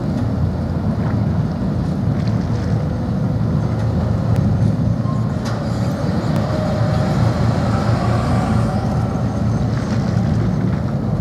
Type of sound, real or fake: real